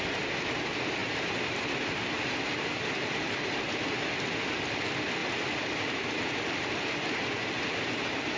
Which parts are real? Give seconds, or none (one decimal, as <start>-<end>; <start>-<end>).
0.0-1.0; 3.6-5.2